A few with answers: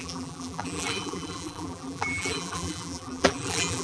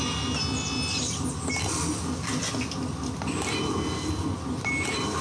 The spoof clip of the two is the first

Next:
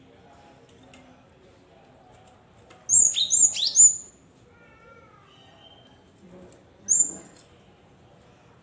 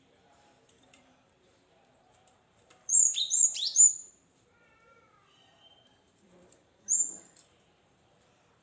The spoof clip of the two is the second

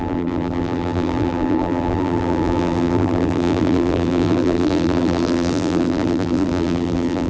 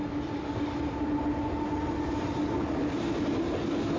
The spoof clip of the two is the first